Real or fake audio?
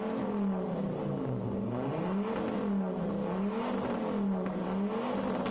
real